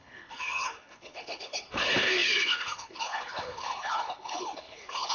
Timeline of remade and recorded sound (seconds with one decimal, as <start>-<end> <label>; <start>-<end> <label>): 0.0-5.1 remade